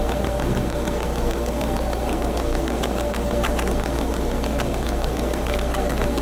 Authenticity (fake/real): fake